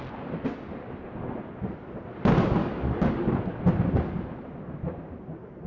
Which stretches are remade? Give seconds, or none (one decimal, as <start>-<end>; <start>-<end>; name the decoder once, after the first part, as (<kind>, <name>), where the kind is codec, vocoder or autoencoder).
2.6-3.6 (codec, DAC)